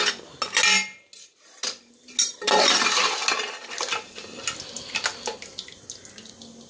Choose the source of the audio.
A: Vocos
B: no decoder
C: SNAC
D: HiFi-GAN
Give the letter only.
B